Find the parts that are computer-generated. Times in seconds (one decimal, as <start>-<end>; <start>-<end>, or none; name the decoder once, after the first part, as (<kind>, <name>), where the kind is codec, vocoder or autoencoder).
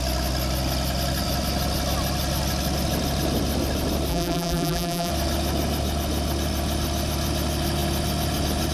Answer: 4.1-5.1 (vocoder, BigVGAN v2)